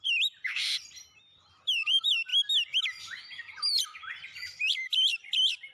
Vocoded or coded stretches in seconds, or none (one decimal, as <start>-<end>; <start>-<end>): 0.0-2.3; 3.2-5.7